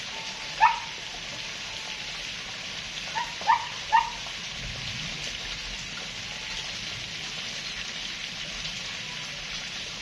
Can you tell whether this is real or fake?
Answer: real